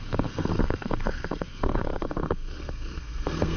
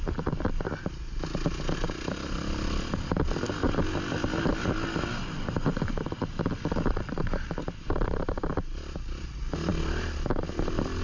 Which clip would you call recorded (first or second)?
second